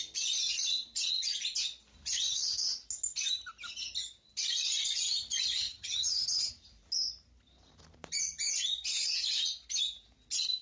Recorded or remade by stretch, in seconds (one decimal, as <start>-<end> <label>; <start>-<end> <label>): 0.0-5.7 recorded; 5.7-6.5 remade; 6.5-10.6 recorded

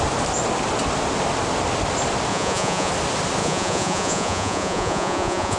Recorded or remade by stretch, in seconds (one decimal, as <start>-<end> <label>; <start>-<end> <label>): 0.0-2.3 recorded; 2.3-2.9 remade; 2.9-3.4 recorded; 3.4-5.6 remade

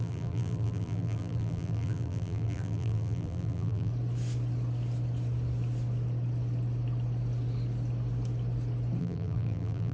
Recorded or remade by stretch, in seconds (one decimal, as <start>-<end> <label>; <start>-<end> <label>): 0.0-3.9 remade; 3.9-9.0 recorded; 9.0-9.9 remade

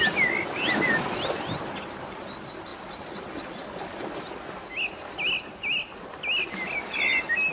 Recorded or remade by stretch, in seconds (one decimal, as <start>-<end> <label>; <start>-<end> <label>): 0.0-7.5 recorded

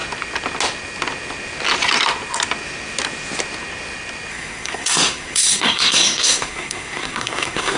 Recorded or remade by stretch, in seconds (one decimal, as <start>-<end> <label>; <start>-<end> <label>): 0.0-4.3 recorded; 4.3-7.8 remade

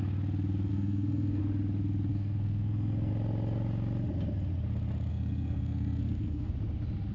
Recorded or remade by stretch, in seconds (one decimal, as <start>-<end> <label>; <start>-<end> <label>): 0.0-0.7 recorded; 0.7-1.4 remade; 1.4-2.1 recorded; 2.1-3.1 remade; 3.1-5.1 recorded; 5.1-6.5 remade; 6.5-7.1 recorded

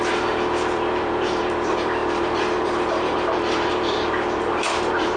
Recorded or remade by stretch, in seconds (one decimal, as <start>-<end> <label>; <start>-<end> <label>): 0.0-5.2 remade